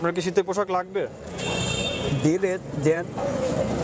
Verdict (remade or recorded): remade